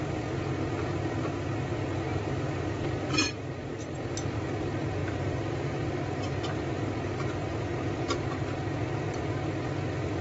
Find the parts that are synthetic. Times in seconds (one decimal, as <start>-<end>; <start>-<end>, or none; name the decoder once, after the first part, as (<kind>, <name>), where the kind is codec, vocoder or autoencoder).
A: 5.0-6.7 (vocoder, BigVGAN v2); 7.4-8.2